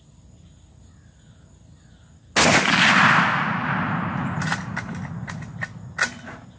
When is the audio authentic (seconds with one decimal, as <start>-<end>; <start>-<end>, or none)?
0.0-6.6